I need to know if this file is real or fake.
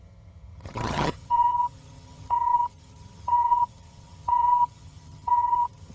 fake